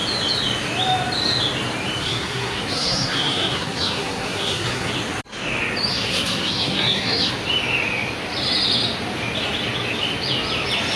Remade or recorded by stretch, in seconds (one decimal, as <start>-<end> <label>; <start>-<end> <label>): 0.0-2.0 recorded; 2.0-4.9 remade; 4.9-5.9 recorded; 5.9-7.3 remade; 7.3-11.0 recorded